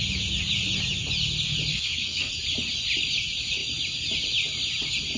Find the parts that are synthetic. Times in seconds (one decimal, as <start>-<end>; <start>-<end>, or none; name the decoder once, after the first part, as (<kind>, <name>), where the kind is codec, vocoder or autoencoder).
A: 1.7-2.3 (codec, SNAC)